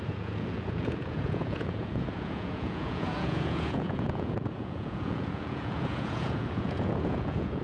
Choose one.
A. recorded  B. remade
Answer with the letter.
B